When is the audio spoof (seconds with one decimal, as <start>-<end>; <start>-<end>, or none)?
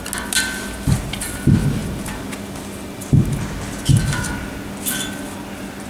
none